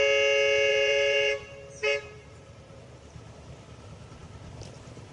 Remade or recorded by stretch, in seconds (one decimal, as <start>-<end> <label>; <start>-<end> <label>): 0.0-0.7 recorded; 0.7-2.8 remade; 2.8-5.1 recorded